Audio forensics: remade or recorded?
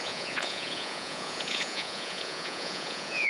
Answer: remade